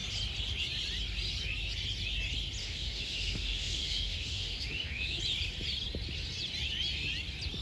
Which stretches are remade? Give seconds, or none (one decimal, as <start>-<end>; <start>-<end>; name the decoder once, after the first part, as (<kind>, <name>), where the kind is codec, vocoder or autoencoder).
2.6-5.2 (autoencoder, DAC-VAE)